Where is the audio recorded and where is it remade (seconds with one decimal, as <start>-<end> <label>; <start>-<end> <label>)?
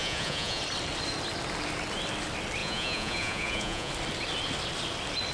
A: 0.0-0.6 remade; 0.6-2.6 recorded; 2.6-3.9 remade; 3.9-5.3 recorded